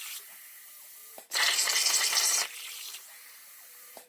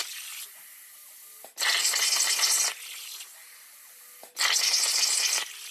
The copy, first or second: first